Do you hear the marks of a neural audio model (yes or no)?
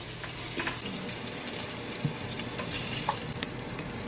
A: no